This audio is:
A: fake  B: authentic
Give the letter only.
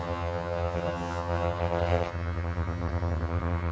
A